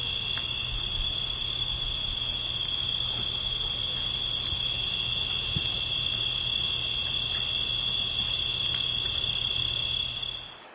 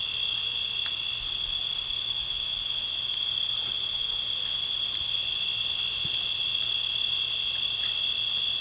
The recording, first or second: second